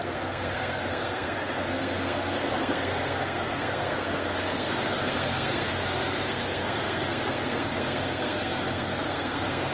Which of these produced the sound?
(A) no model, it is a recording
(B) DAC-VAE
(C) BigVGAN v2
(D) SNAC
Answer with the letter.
D